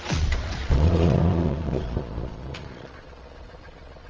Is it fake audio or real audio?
fake